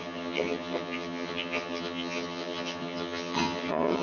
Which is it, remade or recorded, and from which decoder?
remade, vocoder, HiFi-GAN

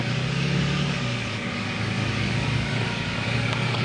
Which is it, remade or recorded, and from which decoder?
remade, codec, DAC